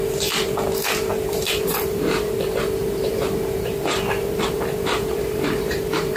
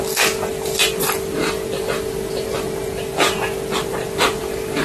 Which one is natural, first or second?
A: second